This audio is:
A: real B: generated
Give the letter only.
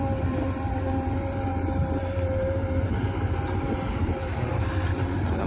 B